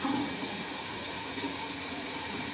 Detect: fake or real fake